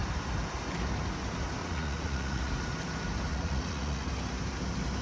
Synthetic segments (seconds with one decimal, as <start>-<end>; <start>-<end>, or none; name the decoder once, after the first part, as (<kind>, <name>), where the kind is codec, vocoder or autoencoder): 1.6-2.5 (vocoder, Vocos); 3.3-4.1